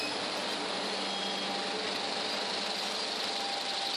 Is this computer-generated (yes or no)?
no